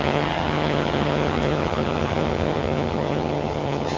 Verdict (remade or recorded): remade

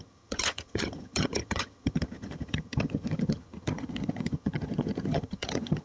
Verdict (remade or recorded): remade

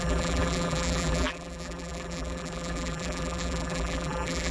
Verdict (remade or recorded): remade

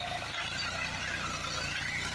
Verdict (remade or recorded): recorded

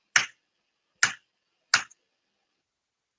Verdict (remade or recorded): recorded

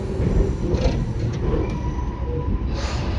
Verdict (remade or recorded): recorded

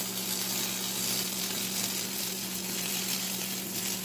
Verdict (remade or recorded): recorded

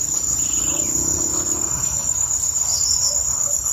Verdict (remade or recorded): remade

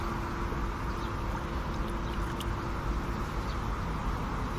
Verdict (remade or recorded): recorded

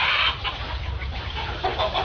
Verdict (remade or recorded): remade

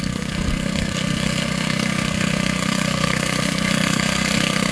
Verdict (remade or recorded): remade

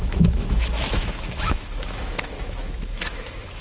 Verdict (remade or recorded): remade